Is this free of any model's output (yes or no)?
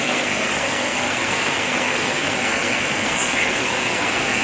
no